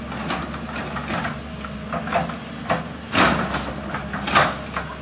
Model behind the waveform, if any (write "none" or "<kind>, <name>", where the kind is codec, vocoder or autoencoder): none